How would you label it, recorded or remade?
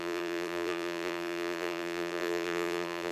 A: remade